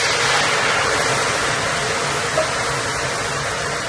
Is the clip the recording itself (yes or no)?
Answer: yes